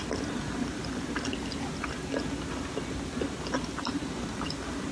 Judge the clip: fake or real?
real